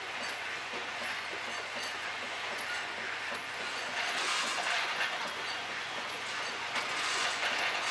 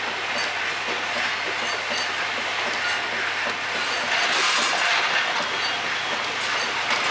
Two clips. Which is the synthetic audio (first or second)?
first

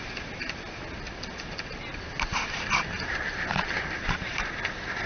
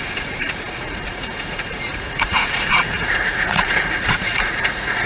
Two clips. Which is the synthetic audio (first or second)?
second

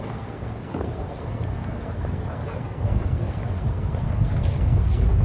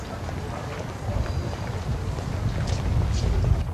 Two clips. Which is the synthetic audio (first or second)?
first